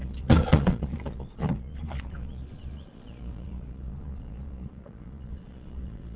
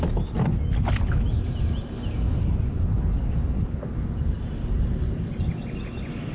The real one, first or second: second